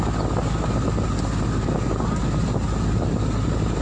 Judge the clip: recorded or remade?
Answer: recorded